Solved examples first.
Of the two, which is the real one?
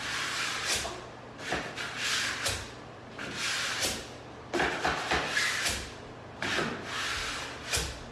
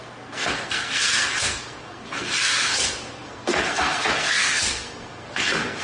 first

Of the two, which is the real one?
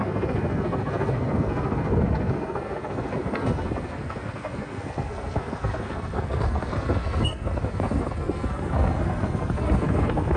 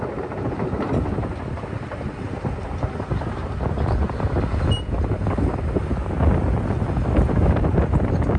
second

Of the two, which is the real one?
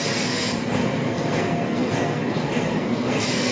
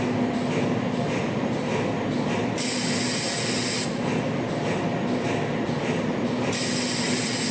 second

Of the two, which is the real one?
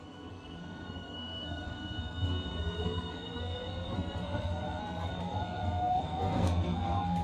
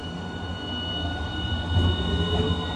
second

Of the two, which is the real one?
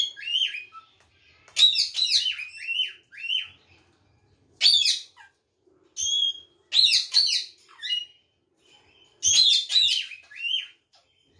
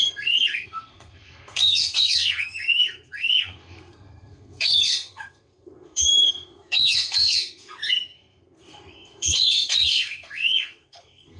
first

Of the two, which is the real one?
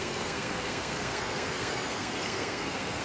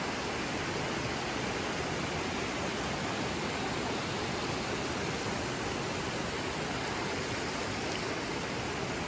second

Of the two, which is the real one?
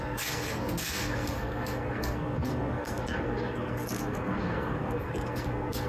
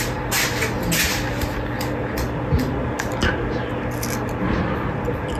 second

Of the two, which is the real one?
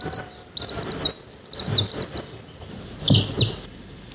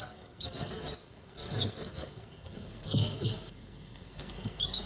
first